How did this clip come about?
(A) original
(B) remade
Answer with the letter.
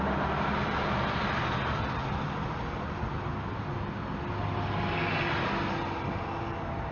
A